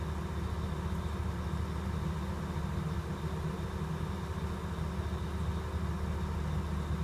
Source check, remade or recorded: recorded